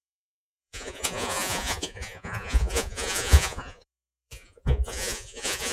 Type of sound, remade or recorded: remade